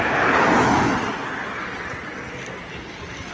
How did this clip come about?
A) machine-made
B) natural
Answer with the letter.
B